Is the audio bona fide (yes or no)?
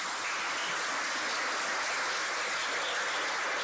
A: yes